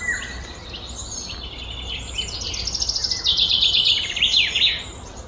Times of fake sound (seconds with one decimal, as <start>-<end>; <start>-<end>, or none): none